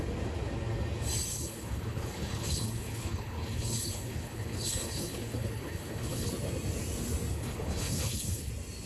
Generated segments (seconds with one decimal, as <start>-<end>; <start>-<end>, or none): 1.3-6.3; 7.3-8.5